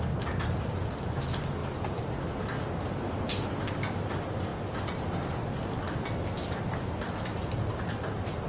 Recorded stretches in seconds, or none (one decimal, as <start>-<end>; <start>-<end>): 0.0-8.5